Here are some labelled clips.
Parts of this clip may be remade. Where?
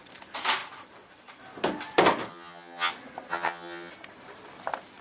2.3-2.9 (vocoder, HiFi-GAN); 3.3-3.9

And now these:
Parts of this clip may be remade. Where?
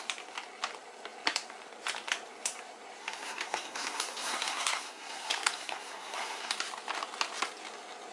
3.0-6.5 (codec, SNAC)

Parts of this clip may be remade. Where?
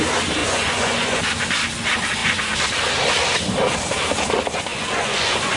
0.4-1.2 (vocoder, Vocos); 4.7-5.6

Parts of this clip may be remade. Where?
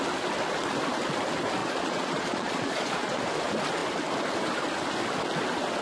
1.6-3.2 (vocoder, Vocos)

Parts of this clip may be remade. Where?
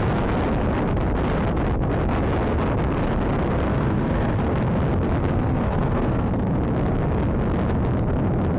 3.7-4.4 (codec, SNAC); 5.2-6.3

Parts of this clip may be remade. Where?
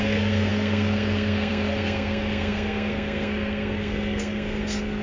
0.0-5.0 (codec, SNAC)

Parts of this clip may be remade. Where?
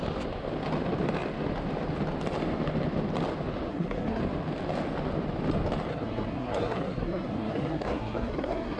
3.7-4.2 (codec, SNAC); 5.9-8.8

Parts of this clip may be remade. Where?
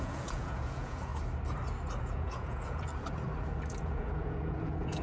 0.0-1.1 (vocoder, Vocos); 2.0-2.9; 3.8-5.0